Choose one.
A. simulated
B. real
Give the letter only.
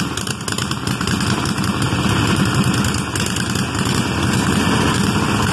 B